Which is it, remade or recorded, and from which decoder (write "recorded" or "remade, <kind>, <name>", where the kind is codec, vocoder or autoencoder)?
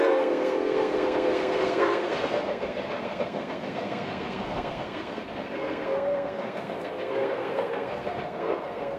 remade, codec, SNAC